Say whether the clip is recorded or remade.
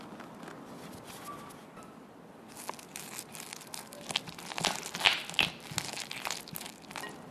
recorded